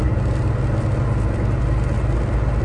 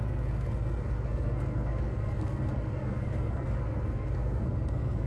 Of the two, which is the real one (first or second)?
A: first